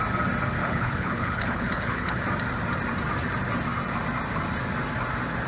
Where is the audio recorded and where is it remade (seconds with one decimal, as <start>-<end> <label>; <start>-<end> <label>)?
0.0-0.6 recorded; 0.6-2.2 remade; 2.2-5.5 recorded